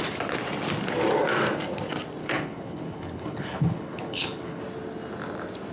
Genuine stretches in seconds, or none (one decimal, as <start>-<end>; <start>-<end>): 0.0-2.2; 4.6-5.7